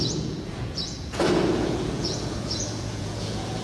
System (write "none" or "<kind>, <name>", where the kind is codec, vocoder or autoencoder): vocoder, Vocos